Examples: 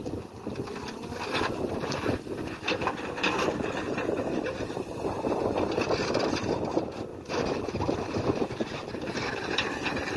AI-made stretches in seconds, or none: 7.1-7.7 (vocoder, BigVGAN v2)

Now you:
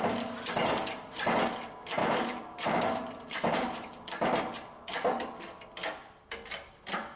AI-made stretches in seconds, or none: 2.0-4.4 (vocoder, BigVGAN v2)